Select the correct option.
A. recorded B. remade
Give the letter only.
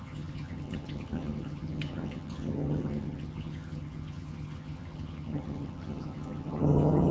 B